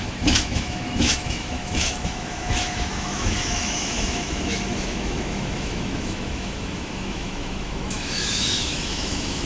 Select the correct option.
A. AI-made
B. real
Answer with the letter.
A